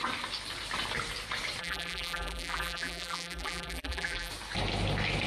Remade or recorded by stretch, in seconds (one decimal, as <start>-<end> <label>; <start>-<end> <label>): 0.0-1.6 recorded; 1.6-4.3 remade; 4.3-5.3 recorded